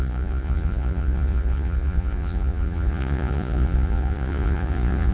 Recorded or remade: remade